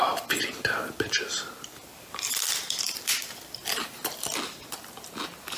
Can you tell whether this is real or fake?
fake